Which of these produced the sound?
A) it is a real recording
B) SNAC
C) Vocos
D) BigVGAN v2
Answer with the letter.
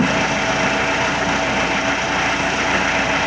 A